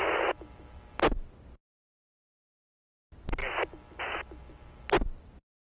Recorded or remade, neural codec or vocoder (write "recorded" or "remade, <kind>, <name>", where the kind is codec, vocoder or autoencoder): recorded